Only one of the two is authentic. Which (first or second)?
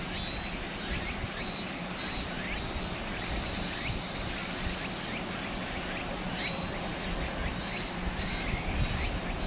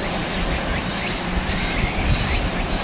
first